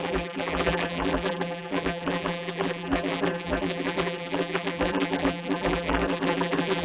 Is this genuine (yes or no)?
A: no